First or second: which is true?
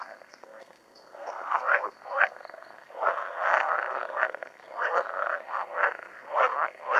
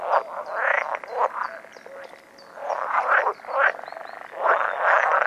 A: second